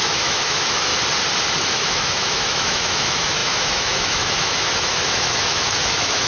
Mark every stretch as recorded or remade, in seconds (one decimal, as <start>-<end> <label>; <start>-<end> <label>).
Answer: 0.0-0.9 remade; 0.9-1.7 recorded; 1.7-6.3 remade